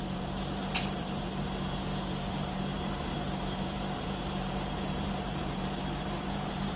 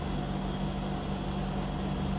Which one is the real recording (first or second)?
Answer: second